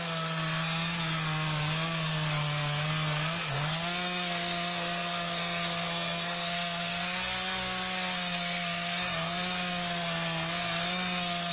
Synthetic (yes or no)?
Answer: yes